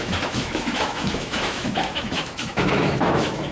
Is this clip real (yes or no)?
no